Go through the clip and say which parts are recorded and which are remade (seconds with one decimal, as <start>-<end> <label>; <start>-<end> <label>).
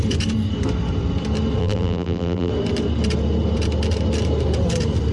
0.0-1.6 recorded; 1.6-2.5 remade; 2.5-5.1 recorded